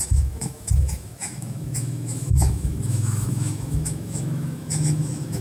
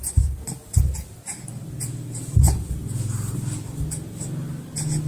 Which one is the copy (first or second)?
first